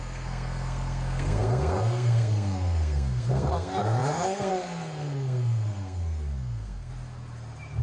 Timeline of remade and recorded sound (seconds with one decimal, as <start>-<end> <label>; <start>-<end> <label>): 0.0-6.9 remade; 6.9-7.8 recorded